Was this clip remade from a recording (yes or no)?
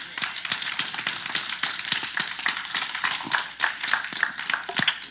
no